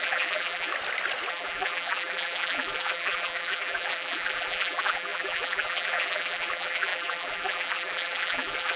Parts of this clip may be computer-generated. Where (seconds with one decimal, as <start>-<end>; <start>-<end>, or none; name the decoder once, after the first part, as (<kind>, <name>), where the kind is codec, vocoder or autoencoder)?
0.0-0.7 (vocoder, BigVGAN v2); 1.3-8.8